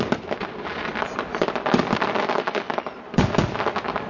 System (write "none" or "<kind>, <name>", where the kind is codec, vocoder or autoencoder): none